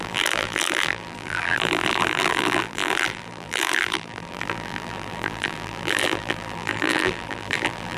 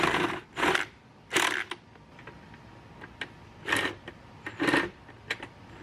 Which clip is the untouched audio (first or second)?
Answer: second